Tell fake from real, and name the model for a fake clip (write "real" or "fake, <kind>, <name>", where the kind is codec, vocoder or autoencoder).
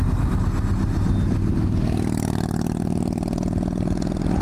real